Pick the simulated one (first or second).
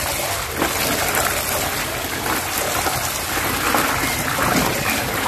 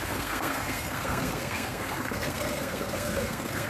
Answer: second